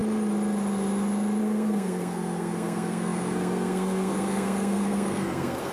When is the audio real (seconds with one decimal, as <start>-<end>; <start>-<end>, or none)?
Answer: 0.0-1.4